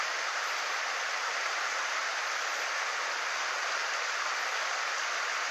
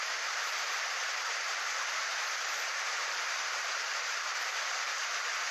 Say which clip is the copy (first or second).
second